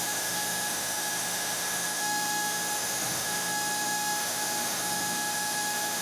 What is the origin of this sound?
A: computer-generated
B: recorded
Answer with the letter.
A